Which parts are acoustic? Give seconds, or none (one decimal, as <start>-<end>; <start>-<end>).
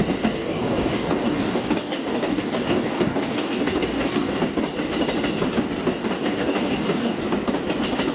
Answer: 0.0-0.4; 4.4-6.0; 7.2-8.1